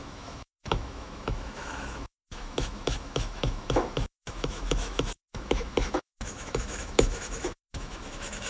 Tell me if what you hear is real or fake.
fake